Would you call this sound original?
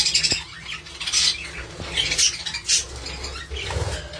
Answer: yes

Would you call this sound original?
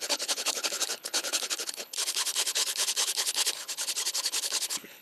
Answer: no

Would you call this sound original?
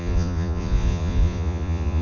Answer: no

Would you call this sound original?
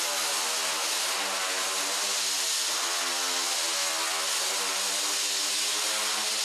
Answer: yes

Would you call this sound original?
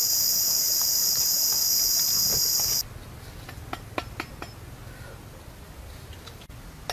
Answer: yes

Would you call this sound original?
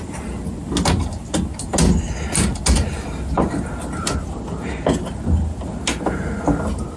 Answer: yes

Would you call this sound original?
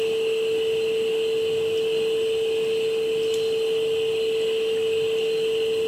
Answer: yes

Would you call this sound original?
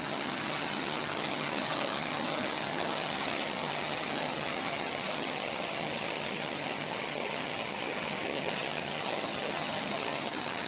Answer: no